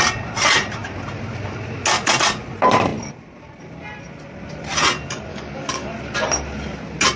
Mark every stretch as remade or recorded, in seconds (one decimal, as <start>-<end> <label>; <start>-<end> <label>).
0.0-5.3 recorded; 5.3-5.9 remade; 5.9-7.2 recorded